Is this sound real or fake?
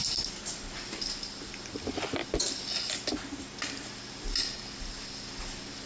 real